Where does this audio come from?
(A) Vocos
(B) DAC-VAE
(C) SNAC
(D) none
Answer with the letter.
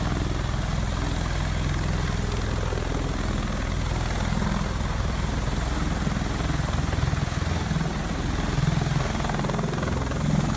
D